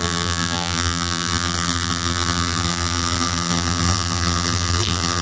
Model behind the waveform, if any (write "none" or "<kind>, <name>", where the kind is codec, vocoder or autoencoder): vocoder, BigVGAN v2